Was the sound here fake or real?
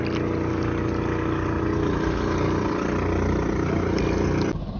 real